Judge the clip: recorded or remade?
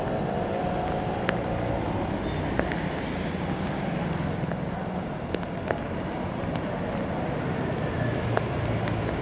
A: recorded